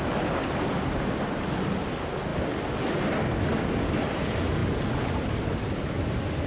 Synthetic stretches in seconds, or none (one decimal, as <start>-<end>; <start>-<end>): none